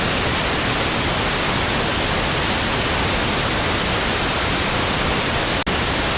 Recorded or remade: recorded